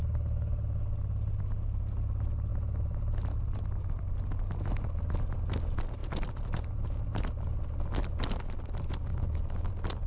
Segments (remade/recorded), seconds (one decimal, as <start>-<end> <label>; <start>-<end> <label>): 0.0-9.1 recorded; 9.1-9.7 remade; 9.7-10.1 recorded